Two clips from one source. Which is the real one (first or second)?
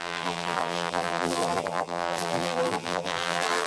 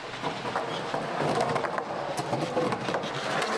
second